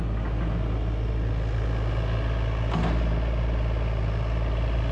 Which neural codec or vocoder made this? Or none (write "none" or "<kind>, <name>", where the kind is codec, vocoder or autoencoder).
none